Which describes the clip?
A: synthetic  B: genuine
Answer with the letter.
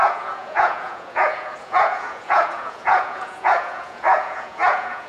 A